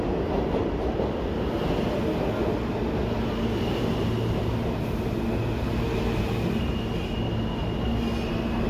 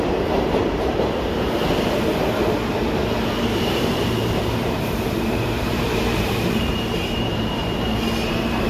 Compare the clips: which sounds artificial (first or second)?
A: second